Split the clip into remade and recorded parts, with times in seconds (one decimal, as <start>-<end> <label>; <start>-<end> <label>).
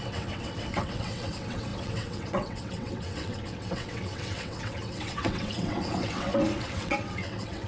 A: 0.0-7.7 remade